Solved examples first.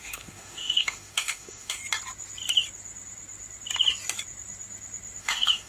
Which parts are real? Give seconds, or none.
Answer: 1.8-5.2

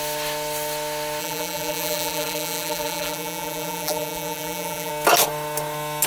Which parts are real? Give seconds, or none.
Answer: 0.0-1.2; 4.9-6.1

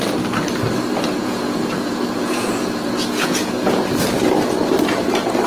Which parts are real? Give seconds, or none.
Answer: 0.0-1.2; 3.9-5.5

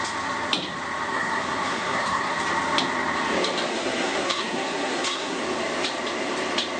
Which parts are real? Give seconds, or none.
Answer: 0.0-1.1; 2.3-3.7; 5.4-6.8

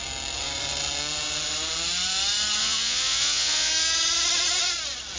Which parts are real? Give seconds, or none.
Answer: 0.0-2.6; 3.7-5.2

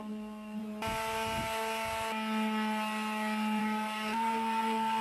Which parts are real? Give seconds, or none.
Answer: 0.6-3.6

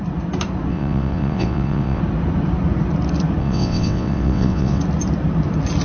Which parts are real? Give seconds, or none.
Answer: 0.0-0.7; 2.0-3.4; 4.8-5.8

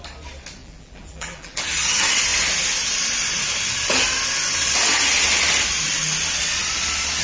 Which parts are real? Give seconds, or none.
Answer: 0.0-0.6; 1.6-7.2